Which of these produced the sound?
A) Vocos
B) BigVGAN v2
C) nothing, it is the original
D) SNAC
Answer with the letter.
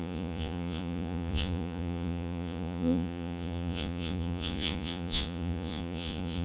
A